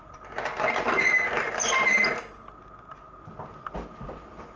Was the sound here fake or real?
real